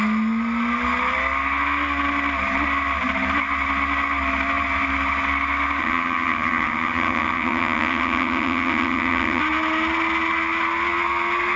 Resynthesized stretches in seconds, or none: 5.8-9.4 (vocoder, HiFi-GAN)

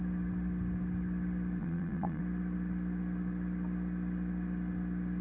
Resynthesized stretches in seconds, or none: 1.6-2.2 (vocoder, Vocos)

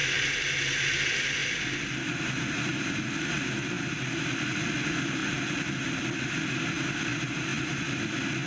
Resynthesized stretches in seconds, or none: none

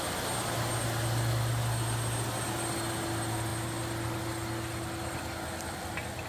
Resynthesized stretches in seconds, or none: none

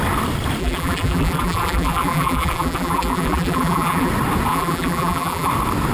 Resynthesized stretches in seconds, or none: 0.6-4.1 (vocoder, BigVGAN v2); 4.5-5.5